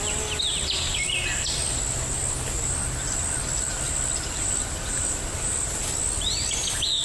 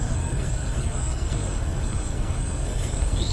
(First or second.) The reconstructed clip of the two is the second